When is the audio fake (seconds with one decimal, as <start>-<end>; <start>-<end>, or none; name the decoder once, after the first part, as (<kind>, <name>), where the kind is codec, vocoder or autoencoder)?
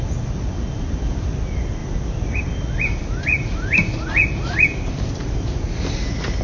3.3-5.6 (vocoder, BigVGAN v2)